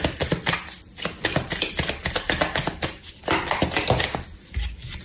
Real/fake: real